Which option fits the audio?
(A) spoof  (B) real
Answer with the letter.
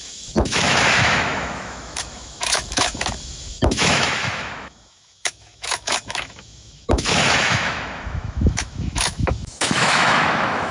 A